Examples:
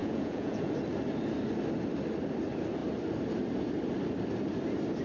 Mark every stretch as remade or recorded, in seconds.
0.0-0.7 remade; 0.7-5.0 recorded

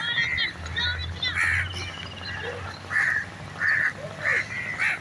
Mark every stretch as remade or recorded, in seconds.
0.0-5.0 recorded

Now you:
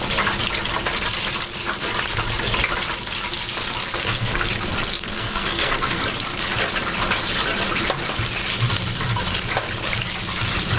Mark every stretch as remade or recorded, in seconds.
0.0-3.8 recorded; 3.8-4.5 remade; 4.5-4.9 recorded; 4.9-6.0 remade; 6.0-10.8 recorded

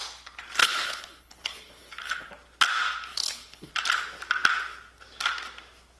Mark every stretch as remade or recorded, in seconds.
0.0-0.6 recorded; 0.6-2.3 remade; 2.3-3.1 recorded; 3.1-3.7 remade; 3.7-6.0 recorded